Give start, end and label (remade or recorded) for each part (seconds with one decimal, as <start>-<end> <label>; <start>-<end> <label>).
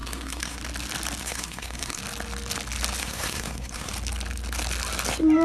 0.0-0.6 remade; 0.6-1.2 recorded; 1.2-2.0 remade; 2.0-3.0 recorded; 3.0-3.9 remade; 3.9-5.4 recorded